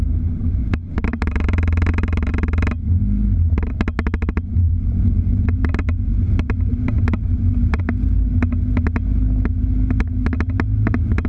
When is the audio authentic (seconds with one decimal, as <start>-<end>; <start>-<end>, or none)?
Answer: 0.0-0.6; 2.3-4.5; 7.8-11.3